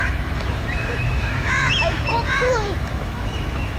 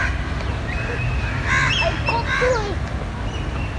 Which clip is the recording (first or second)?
second